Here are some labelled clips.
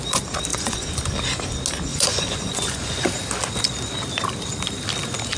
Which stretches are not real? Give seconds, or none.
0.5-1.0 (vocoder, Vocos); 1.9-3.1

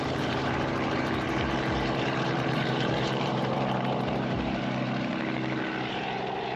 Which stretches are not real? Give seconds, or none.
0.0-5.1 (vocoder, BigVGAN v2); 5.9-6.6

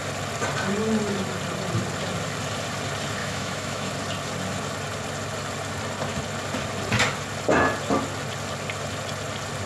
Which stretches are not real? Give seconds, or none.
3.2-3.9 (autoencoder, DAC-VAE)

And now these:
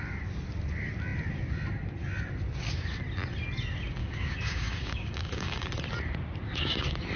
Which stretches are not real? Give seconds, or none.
4.0-5.7 (codec, DAC)

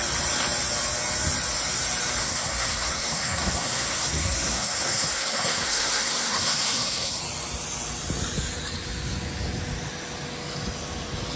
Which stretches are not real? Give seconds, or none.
2.2-7.2 (codec, SNAC)

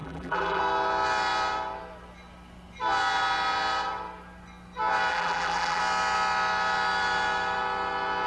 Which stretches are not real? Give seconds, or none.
0.0-0.6 (vocoder, BigVGAN v2); 5.1-5.8

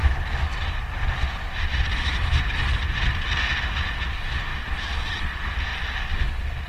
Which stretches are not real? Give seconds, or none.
none